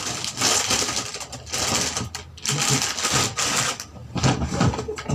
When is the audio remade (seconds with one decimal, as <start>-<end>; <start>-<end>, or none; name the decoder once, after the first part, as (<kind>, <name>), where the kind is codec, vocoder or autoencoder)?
none